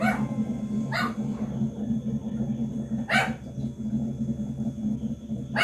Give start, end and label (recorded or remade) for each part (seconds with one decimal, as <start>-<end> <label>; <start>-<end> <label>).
0.0-5.6 recorded